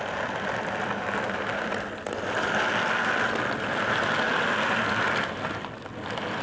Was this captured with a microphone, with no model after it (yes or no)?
yes